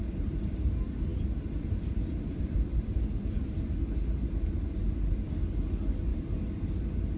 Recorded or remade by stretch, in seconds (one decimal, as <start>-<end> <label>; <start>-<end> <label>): 0.0-1.1 recorded; 1.1-3.6 remade; 3.6-7.2 recorded